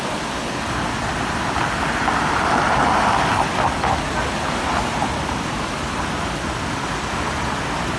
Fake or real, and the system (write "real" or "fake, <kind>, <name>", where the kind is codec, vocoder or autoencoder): real